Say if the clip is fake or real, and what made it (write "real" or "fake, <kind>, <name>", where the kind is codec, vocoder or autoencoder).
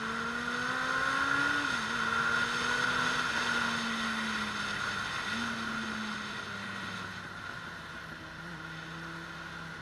real